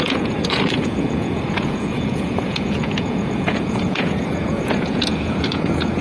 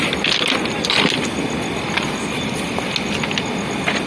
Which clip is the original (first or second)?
second